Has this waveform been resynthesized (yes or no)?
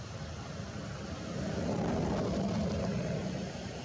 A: no